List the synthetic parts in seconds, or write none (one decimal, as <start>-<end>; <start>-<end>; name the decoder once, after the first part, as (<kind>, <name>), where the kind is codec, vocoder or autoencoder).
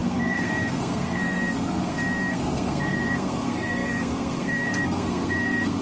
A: 0.0-5.8 (codec, SNAC)